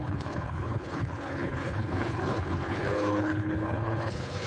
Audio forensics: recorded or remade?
remade